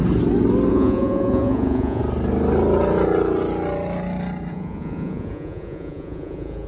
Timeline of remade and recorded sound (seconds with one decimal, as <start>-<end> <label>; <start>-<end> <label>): 0.0-0.7 recorded; 0.7-2.0 remade; 2.0-4.5 recorded; 4.5-6.7 remade